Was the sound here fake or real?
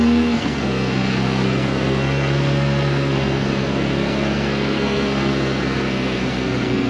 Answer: fake